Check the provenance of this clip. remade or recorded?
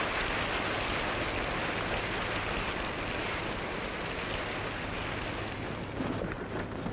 recorded